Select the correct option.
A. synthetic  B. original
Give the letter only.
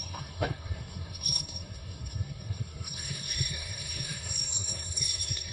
A